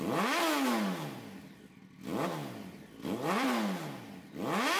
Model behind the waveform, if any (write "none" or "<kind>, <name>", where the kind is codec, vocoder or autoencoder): none